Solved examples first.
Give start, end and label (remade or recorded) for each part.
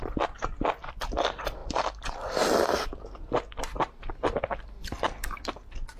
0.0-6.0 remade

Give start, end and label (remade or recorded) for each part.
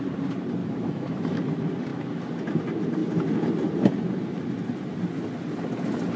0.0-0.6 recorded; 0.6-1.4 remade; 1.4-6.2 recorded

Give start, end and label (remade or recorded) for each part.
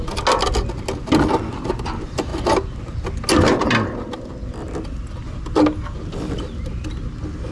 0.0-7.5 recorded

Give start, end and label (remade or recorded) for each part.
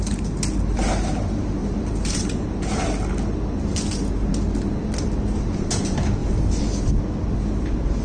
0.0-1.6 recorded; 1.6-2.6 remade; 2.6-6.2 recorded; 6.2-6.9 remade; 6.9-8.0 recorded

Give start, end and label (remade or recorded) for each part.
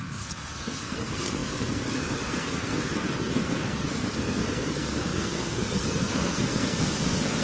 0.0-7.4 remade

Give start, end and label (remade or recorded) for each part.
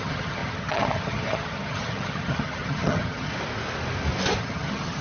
0.0-3.3 remade; 3.3-4.4 recorded; 4.4-5.0 remade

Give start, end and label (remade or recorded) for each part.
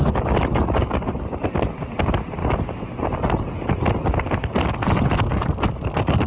0.0-6.3 recorded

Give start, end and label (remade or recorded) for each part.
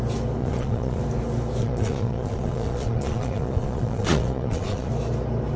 0.0-0.4 recorded; 0.4-1.0 remade; 1.0-1.6 recorded; 1.6-4.9 remade; 4.9-5.6 recorded